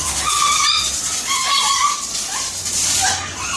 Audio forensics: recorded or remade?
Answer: remade